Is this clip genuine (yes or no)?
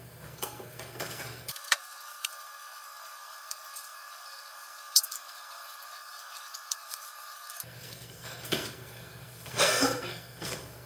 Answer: no